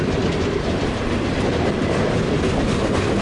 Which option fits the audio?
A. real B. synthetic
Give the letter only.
A